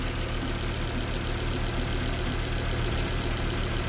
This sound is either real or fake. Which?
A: real